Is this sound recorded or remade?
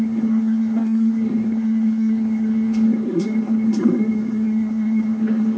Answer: remade